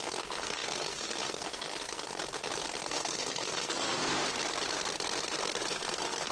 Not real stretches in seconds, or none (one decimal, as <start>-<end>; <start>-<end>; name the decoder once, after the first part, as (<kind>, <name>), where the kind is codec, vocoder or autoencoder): 0.0-2.2 (codec, SNAC); 2.8-4.1; 5.7-6.3

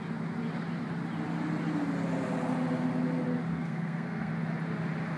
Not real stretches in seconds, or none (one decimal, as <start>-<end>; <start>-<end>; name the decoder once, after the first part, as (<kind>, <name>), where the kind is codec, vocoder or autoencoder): 3.5-4.3 (codec, SNAC)

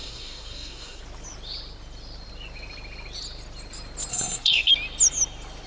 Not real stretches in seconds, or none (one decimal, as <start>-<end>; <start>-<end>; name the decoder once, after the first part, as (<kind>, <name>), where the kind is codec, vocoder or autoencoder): 0.0-1.0 (codec, SNAC); 4.1-4.7

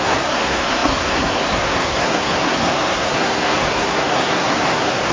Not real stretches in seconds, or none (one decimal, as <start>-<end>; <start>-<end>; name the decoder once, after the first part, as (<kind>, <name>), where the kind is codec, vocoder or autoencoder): 0.0-5.1 (codec, SNAC)

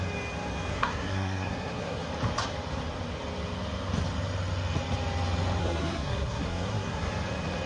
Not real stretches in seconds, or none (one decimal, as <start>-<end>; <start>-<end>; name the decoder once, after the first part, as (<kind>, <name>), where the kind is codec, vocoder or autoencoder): 0.7-2.1 (codec, SNAC); 5.6-7.1